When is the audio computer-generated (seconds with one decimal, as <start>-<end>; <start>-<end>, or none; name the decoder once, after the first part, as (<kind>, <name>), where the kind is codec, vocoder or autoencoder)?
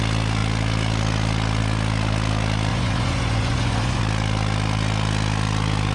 2.7-4.0 (vocoder, Vocos)